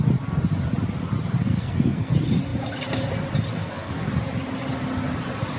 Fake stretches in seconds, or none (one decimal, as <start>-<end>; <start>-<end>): 1.4-2.1; 3.5-4.1